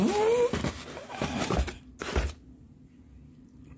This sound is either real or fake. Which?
real